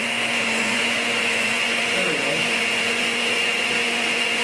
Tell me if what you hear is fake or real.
fake